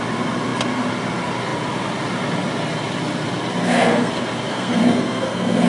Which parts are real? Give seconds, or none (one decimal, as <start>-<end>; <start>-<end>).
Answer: 0.0-3.6; 4.1-4.5